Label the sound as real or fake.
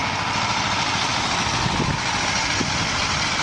real